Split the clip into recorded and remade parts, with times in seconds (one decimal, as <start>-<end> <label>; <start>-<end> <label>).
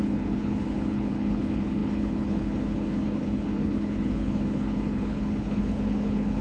0.0-6.4 remade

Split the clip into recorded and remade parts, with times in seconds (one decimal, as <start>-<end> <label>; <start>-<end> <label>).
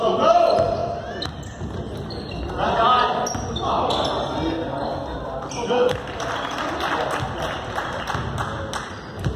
0.0-9.4 recorded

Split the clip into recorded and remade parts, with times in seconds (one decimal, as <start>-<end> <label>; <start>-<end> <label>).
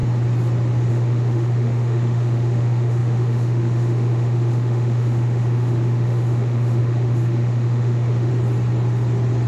0.0-0.9 recorded; 0.9-8.3 remade; 8.3-9.5 recorded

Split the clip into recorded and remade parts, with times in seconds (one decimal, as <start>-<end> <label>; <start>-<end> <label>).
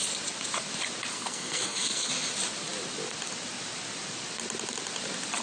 0.0-1.1 recorded; 1.1-2.1 remade; 2.1-5.4 recorded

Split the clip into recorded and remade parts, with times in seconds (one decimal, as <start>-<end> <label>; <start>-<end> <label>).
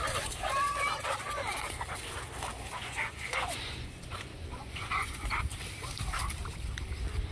0.0-2.8 recorded; 2.8-5.4 remade; 5.4-7.3 recorded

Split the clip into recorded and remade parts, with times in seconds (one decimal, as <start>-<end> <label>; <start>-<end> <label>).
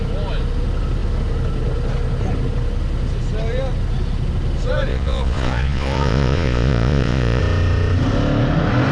0.0-4.9 recorded; 4.9-7.4 remade; 7.4-8.9 recorded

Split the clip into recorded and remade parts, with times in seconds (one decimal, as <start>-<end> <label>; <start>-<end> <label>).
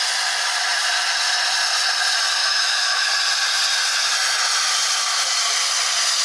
0.0-2.4 recorded; 2.4-3.1 remade; 3.1-6.2 recorded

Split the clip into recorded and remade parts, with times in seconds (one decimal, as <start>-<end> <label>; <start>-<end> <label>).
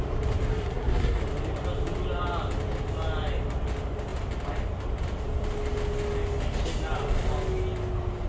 0.0-0.5 recorded; 0.5-1.2 remade; 1.2-8.3 recorded